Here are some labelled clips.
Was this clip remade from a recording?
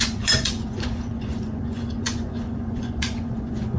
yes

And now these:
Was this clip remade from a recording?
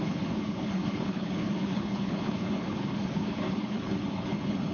yes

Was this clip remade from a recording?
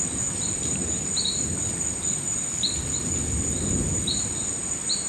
no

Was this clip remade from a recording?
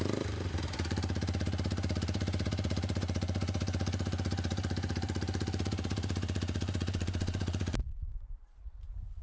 yes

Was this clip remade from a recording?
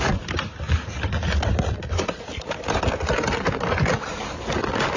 no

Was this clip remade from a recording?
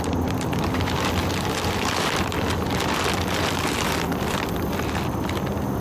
no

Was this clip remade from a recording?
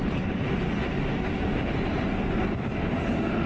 no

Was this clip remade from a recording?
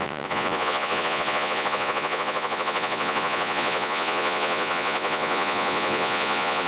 yes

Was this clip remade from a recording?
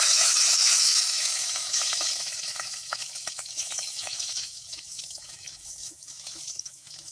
yes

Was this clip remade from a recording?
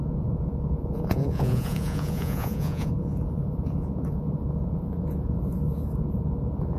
yes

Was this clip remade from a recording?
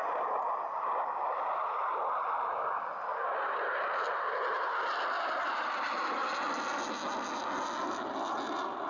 no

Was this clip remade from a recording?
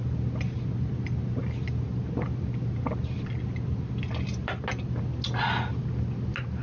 no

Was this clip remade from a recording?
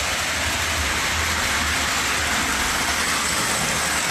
no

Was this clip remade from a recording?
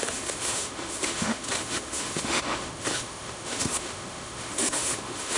yes